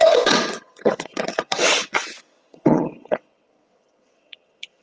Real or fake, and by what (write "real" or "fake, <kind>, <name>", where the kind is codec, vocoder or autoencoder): fake, vocoder, WaveNeXt